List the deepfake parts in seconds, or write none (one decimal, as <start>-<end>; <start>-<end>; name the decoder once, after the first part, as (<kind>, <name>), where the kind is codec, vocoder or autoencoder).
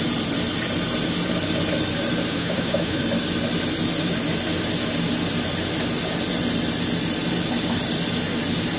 2.3-3.0 (autoencoder, DAC-VAE)